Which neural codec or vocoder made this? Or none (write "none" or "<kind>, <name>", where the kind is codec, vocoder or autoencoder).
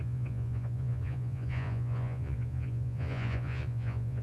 vocoder, Vocos